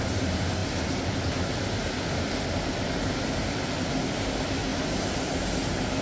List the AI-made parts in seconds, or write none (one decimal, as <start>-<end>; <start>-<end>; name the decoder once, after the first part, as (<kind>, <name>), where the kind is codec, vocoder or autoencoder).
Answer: none